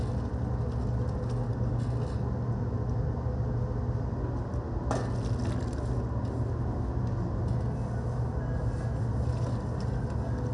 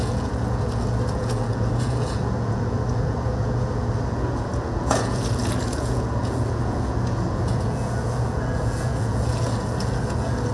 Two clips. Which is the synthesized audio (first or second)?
second